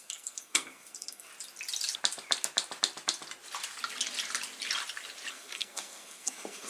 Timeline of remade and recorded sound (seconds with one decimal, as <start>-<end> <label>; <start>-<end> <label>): 0.0-1.3 remade; 1.3-5.3 recorded; 5.3-6.7 remade